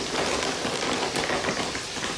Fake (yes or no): no